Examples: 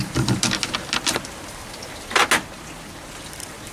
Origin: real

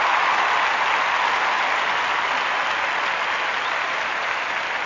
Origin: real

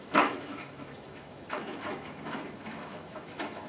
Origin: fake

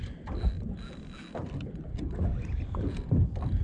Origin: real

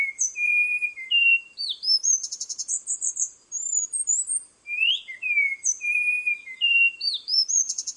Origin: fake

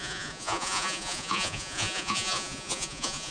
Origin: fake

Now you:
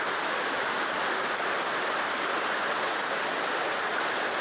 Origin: real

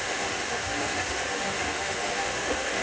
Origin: fake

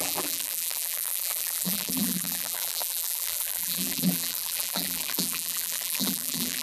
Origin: fake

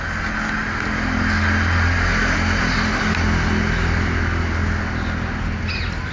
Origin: real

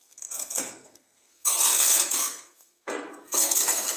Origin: fake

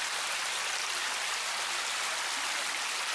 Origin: real